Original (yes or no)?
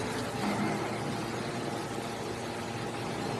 yes